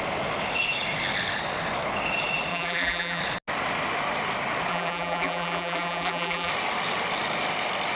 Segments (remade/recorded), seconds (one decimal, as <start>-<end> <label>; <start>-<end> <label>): 0.0-2.5 recorded; 2.5-3.2 remade; 3.2-4.7 recorded; 4.7-6.5 remade; 6.5-8.0 recorded